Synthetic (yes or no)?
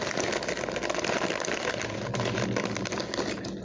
no